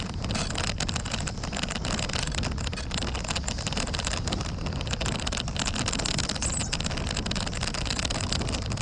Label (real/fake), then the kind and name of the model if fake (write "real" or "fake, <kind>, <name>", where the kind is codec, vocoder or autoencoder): real